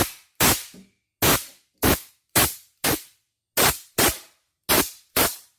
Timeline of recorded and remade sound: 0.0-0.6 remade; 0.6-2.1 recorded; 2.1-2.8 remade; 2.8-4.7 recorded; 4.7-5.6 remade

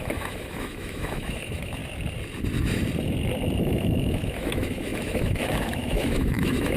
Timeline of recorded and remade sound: 0.0-1.8 remade; 1.8-3.6 recorded; 3.6-6.8 remade

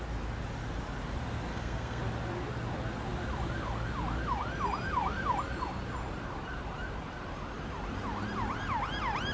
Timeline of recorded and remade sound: 0.0-1.5 recorded; 1.5-2.0 remade; 2.0-9.3 recorded

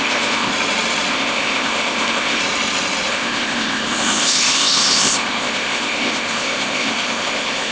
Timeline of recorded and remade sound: 0.0-0.5 remade; 0.5-1.1 recorded; 1.1-2.4 remade; 2.4-3.1 recorded; 3.1-7.7 remade

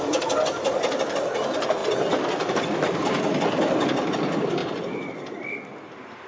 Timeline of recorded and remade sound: 0.0-6.3 recorded

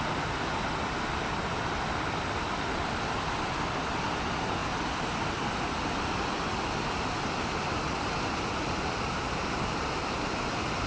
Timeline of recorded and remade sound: 0.0-10.9 recorded

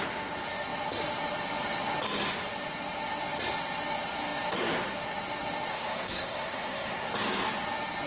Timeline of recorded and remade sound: 0.0-5.7 recorded; 5.7-7.1 remade; 7.1-8.1 recorded